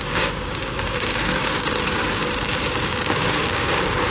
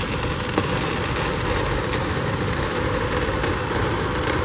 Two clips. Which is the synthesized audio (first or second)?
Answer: first